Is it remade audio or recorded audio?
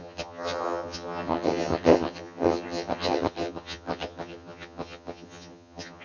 remade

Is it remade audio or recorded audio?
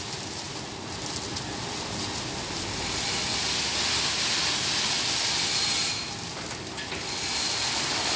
recorded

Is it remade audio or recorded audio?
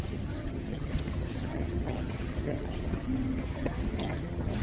remade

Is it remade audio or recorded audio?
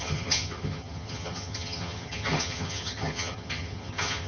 remade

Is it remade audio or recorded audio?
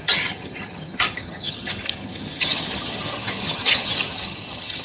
remade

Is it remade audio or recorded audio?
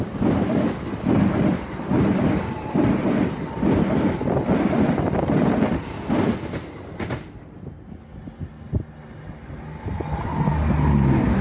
recorded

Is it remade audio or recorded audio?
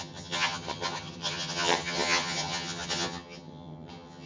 remade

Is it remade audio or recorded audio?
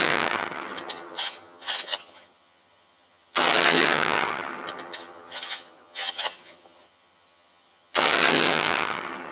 remade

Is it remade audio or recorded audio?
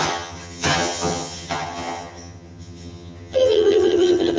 remade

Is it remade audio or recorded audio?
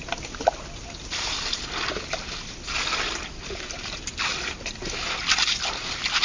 recorded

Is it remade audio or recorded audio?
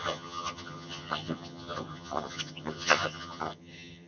remade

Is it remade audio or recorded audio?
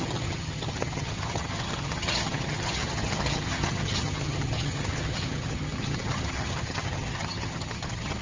remade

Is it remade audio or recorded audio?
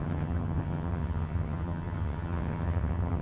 remade